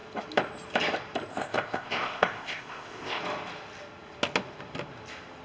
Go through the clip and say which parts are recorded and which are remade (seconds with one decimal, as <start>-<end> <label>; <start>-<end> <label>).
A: 0.0-1.3 recorded; 1.3-3.2 remade; 3.2-5.4 recorded